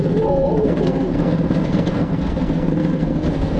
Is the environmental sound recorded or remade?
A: remade